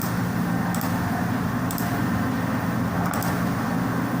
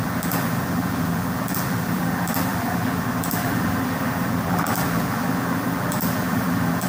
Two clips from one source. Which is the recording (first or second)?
first